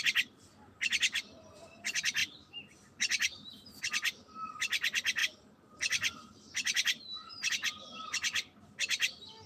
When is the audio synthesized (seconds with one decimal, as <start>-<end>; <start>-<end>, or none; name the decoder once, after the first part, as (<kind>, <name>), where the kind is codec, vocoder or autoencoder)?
2.2-3.7 (vocoder, BigVGAN v2); 5.2-7.5